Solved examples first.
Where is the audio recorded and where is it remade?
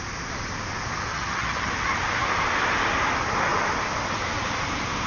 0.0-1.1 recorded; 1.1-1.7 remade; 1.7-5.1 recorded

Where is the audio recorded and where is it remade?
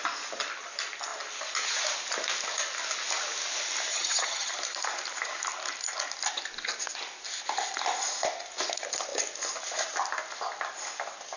0.0-3.9 recorded; 3.9-4.5 remade; 4.5-11.4 recorded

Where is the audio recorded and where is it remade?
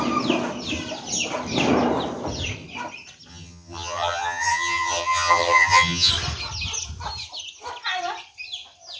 0.0-3.3 recorded; 3.3-6.1 remade; 6.1-9.0 recorded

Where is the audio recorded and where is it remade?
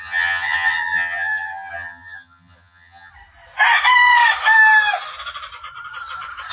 0.0-3.1 remade; 3.1-6.5 recorded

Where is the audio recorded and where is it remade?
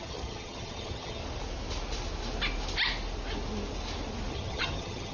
0.0-1.2 remade; 1.2-4.3 recorded; 4.3-5.1 remade